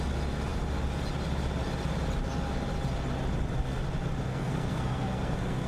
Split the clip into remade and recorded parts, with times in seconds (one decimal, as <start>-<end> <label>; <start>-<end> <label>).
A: 0.0-4.3 recorded; 4.3-5.7 remade